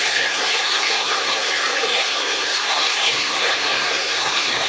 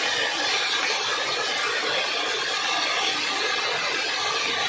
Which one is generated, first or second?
first